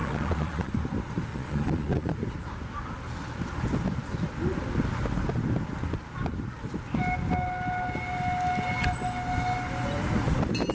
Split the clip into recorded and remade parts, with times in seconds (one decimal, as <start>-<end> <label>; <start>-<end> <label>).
0.0-0.7 remade; 0.7-1.3 recorded; 1.3-2.1 remade; 2.1-10.7 recorded